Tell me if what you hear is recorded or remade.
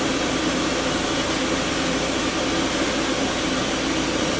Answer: recorded